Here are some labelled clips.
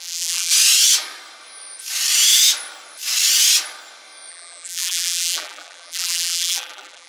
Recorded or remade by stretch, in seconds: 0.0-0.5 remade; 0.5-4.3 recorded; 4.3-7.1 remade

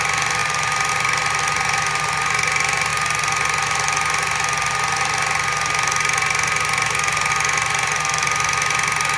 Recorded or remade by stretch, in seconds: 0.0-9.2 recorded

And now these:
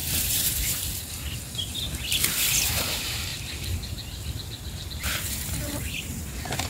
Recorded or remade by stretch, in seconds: 0.0-1.1 remade; 1.1-6.7 recorded

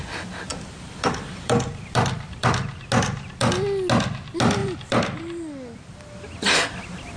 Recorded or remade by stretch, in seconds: 0.0-0.5 recorded; 0.5-2.8 remade; 2.8-4.6 recorded; 4.6-6.8 remade; 6.8-7.2 recorded

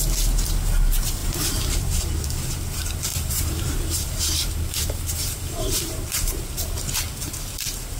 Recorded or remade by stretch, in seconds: 0.0-1.2 recorded; 1.2-2.0 remade; 2.0-3.1 recorded; 3.1-6.3 remade; 6.3-8.0 recorded

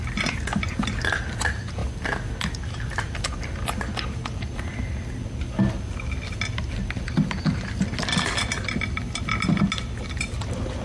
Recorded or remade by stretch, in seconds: 0.0-10.8 recorded

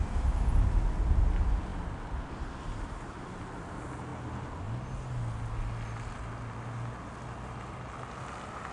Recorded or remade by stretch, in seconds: 0.0-8.7 recorded

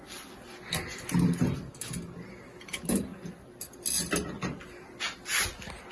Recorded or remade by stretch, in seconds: 0.0-5.9 recorded